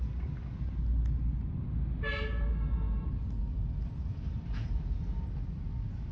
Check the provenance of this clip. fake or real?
real